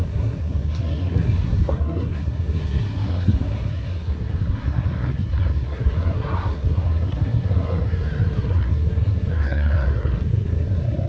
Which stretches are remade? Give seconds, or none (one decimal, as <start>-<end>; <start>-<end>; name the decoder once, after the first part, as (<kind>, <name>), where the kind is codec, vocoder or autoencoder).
0.0-11.1 (codec, SNAC)